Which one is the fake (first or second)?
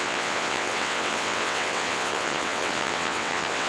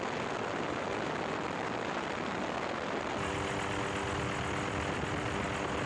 first